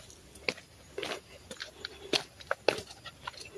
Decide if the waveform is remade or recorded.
recorded